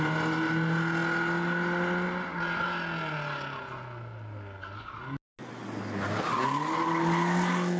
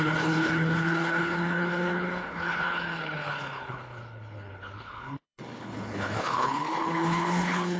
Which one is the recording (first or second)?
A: first